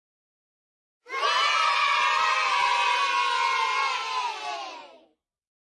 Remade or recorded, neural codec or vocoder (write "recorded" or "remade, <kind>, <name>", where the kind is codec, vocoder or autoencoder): recorded